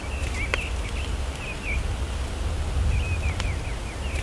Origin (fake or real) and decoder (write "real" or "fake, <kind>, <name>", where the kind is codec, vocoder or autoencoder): real